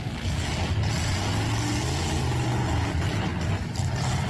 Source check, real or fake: real